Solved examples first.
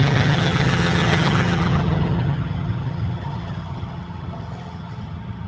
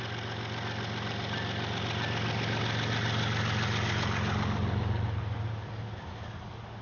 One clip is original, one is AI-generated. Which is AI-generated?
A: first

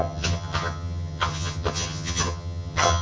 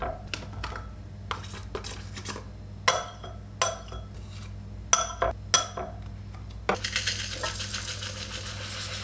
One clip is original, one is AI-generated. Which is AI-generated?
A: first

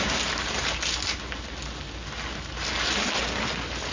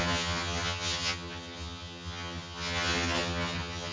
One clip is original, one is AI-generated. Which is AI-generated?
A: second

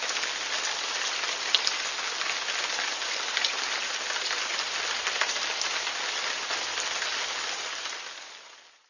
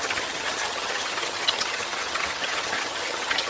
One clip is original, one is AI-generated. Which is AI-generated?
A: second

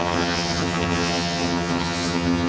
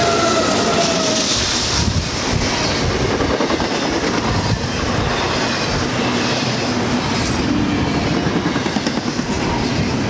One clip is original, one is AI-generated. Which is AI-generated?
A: first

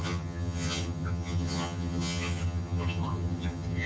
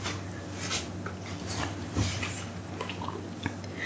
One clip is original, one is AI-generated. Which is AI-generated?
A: first